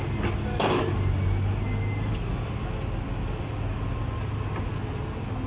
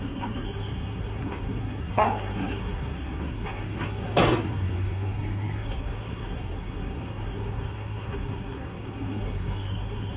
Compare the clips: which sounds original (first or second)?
first